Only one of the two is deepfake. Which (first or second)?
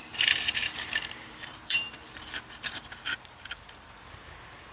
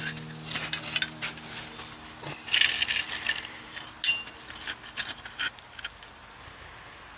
first